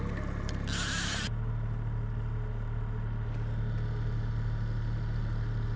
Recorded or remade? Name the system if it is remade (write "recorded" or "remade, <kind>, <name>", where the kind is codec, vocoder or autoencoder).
recorded